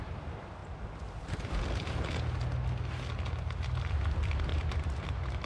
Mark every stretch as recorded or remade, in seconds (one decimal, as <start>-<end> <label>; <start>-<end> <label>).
0.0-4.5 recorded; 4.5-5.5 remade